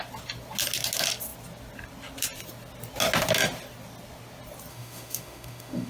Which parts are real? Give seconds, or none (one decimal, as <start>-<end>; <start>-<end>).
0.0-4.7